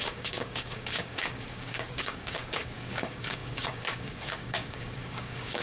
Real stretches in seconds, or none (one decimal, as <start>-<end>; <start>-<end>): none